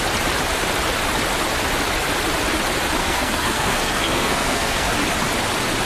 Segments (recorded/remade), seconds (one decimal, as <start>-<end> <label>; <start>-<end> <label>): 0.0-3.0 recorded; 3.0-4.9 remade; 4.9-5.9 recorded